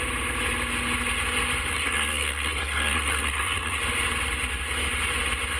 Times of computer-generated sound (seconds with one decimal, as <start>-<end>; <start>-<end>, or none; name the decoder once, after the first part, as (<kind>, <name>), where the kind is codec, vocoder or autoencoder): 1.7-3.8 (codec, SNAC)